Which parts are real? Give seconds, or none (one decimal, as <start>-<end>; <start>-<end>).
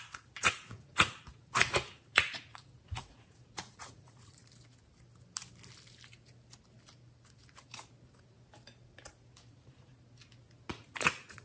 4.4-9.5; 9.9-10.7